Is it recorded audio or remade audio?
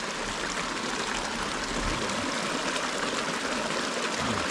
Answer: recorded